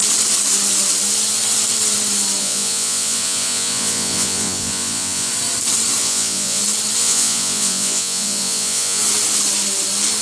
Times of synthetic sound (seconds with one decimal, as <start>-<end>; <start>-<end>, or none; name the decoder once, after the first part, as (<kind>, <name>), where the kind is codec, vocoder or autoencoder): 2.4-5.3 (vocoder, Vocos); 6.0-6.6; 7.0-9.0